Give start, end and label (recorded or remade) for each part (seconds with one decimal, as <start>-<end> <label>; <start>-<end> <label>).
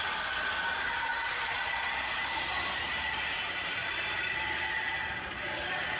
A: 0.0-6.0 remade